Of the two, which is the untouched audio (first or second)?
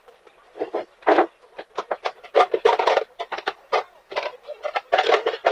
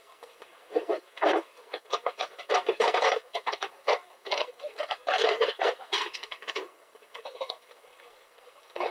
first